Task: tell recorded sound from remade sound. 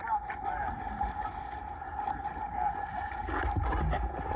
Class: recorded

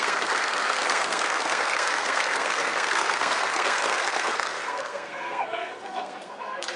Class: remade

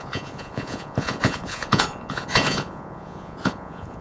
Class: remade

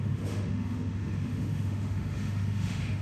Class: remade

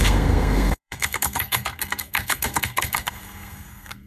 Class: remade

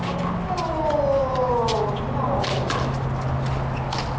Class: recorded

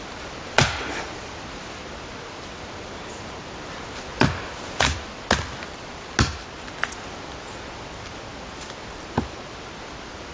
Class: recorded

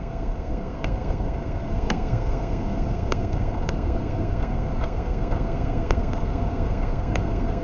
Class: remade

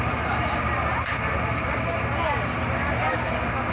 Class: recorded